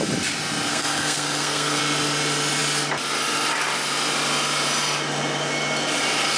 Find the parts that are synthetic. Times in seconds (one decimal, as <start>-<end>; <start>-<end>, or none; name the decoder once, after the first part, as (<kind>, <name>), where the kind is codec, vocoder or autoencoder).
0.7-1.8 (codec, SNAC)